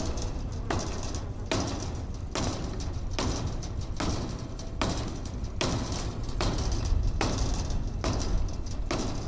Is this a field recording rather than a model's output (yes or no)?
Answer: yes